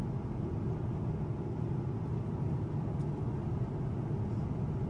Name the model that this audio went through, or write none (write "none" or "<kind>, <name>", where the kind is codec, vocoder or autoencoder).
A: none